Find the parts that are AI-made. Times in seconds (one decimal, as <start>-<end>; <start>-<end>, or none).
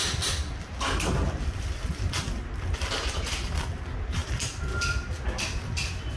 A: none